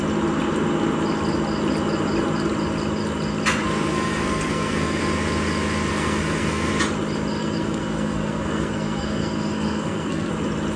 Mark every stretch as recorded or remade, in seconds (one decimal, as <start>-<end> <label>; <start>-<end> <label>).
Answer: 0.0-3.9 recorded; 3.9-5.0 remade; 5.0-5.9 recorded; 5.9-6.7 remade; 6.7-7.4 recorded; 7.4-10.3 remade; 10.3-10.8 recorded